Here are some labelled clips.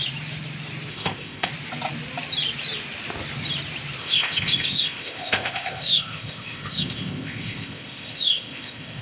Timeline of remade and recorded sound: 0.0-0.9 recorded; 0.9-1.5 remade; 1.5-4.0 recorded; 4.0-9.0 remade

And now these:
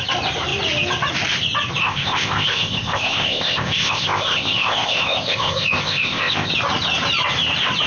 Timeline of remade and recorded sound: 0.0-1.8 recorded; 1.8-6.5 remade; 6.5-7.9 recorded

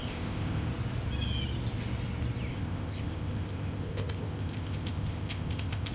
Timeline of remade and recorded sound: 0.0-0.7 remade; 0.7-2.5 recorded; 2.5-5.9 remade

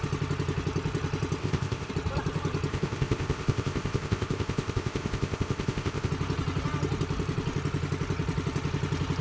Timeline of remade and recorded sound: 0.0-1.4 recorded; 1.4-1.9 remade; 1.9-2.7 recorded; 2.7-6.1 remade; 6.1-9.2 recorded

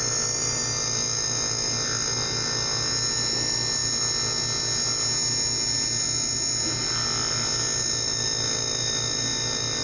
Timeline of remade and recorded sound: 0.0-9.8 recorded